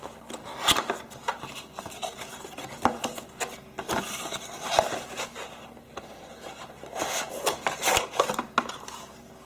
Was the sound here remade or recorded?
recorded